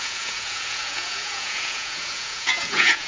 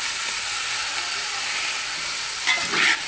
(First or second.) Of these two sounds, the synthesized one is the first